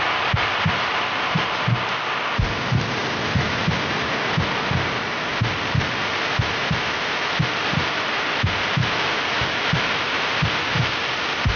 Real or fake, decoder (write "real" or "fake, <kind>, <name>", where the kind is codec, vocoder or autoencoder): fake, vocoder, BigVGAN v2